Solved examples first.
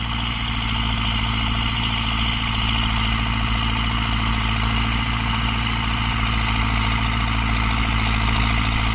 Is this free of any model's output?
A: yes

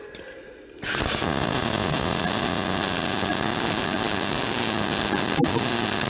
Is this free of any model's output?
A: yes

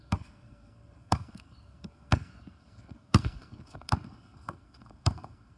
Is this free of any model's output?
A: no